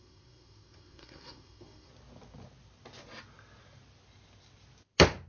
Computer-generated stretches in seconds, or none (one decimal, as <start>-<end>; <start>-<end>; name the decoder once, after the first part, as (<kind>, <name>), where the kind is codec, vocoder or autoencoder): 0.0-1.9 (codec, SNAC)